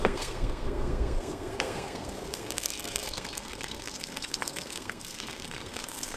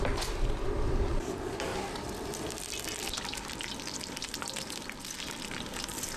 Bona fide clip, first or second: second